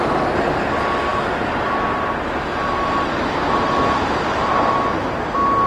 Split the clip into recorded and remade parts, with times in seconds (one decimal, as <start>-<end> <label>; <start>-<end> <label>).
0.0-5.7 recorded